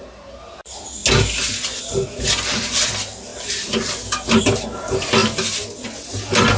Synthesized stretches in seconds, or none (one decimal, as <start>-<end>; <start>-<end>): none